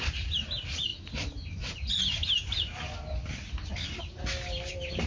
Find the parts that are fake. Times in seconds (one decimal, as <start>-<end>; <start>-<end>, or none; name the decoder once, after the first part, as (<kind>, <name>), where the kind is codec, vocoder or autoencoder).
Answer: none